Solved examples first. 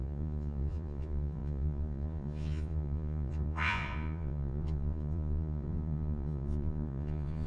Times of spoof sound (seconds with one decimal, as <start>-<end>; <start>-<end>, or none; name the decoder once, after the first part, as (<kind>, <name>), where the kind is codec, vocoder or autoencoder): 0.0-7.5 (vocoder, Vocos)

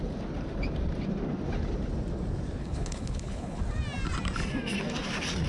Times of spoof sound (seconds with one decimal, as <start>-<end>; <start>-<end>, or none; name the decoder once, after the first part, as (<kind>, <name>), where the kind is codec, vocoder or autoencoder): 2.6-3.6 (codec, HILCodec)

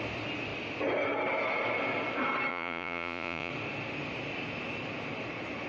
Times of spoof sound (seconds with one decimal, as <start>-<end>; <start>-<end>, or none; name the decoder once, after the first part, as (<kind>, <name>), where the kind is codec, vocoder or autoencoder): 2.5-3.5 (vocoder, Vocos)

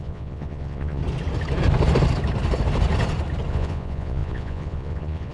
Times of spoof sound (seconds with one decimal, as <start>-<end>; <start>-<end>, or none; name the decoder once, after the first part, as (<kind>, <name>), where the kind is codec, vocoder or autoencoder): 0.0-1.0 (vocoder, Vocos); 3.5-5.3

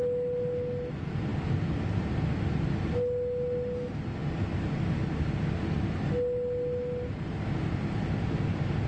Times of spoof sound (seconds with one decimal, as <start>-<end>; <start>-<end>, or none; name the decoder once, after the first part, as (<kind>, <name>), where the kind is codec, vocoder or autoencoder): none

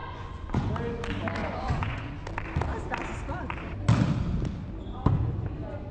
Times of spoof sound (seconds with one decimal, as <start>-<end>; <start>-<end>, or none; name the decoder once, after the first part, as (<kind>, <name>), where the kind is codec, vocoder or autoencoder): 0.0-0.7 (vocoder, Vocos); 1.4-2.1

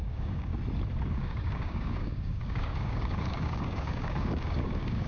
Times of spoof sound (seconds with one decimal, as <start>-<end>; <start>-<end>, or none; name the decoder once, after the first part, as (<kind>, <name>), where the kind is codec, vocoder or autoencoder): 0.0-0.5 (codec, DAC); 1.1-5.1